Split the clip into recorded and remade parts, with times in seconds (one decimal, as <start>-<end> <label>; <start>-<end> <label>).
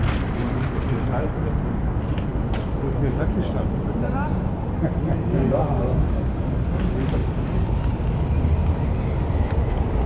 0.0-10.1 recorded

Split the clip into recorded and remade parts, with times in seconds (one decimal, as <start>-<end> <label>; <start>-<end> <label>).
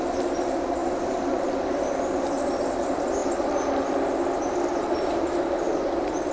0.0-6.3 recorded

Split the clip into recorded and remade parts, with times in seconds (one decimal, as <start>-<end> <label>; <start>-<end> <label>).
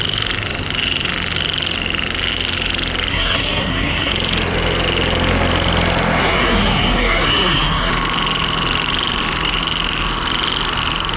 0.0-3.1 recorded; 3.1-4.1 remade; 4.1-6.2 recorded; 6.2-7.9 remade; 7.9-11.2 recorded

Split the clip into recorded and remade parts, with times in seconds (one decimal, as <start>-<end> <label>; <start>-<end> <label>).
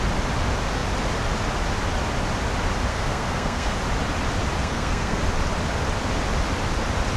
0.0-2.9 recorded; 2.9-3.8 remade; 3.8-4.6 recorded; 4.6-5.2 remade; 5.2-7.2 recorded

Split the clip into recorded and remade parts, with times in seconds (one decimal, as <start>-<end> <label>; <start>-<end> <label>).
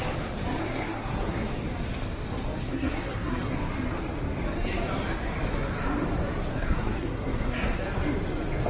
0.0-0.6 recorded; 0.6-1.5 remade; 1.5-2.6 recorded; 2.6-3.5 remade; 3.5-6.5 recorded; 6.5-7.8 remade; 7.8-8.7 recorded